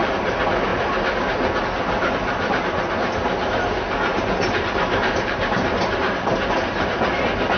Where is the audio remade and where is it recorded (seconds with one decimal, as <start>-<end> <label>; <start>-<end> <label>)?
0.0-4.1 recorded; 4.1-6.9 remade; 6.9-7.6 recorded